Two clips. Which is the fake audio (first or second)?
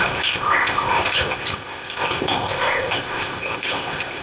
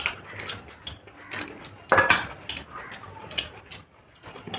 first